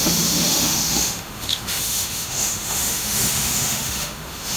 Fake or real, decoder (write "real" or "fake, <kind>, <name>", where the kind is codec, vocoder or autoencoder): fake, autoencoder, DAC-VAE